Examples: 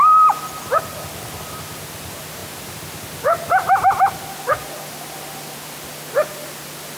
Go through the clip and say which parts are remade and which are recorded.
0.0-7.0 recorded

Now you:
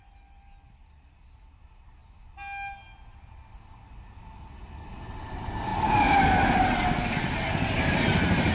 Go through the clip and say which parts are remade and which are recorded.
0.0-8.5 recorded

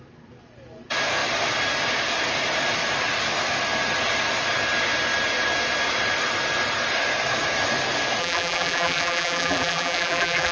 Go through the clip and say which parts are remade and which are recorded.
0.0-8.2 recorded; 8.2-10.5 remade

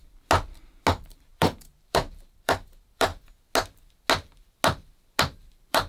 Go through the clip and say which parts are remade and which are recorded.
0.0-0.9 recorded; 0.9-3.1 remade; 3.1-5.2 recorded; 5.2-5.9 remade

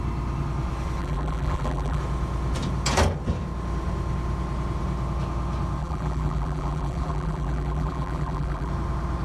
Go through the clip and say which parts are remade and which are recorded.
0.0-1.0 recorded; 1.0-2.0 remade; 2.0-5.8 recorded; 5.8-8.7 remade; 8.7-9.2 recorded

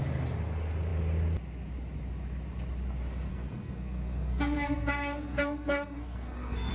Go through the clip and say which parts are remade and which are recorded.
0.0-3.3 recorded; 3.3-6.7 remade

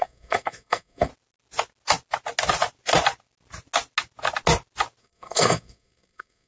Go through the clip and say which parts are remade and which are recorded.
0.0-1.1 remade; 1.1-5.0 recorded; 5.0-6.5 remade

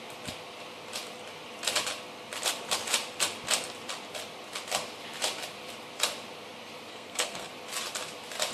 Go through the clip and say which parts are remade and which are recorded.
0.0-6.9 recorded; 6.9-7.5 remade; 7.5-8.5 recorded